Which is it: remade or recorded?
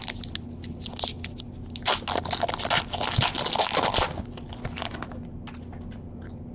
recorded